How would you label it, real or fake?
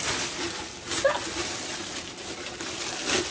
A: real